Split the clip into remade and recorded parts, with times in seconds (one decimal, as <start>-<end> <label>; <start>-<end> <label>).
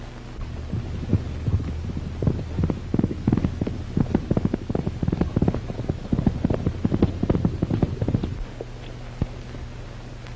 0.0-10.4 recorded